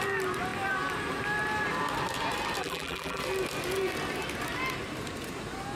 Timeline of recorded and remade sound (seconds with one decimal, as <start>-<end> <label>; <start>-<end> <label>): 0.0-2.6 recorded; 2.6-3.2 remade; 3.2-5.8 recorded